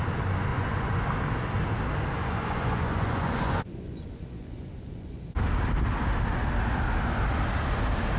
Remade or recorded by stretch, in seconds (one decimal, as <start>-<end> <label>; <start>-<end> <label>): 0.0-0.5 recorded; 0.5-1.1 remade; 1.1-2.2 recorded; 2.2-5.2 remade; 5.2-8.2 recorded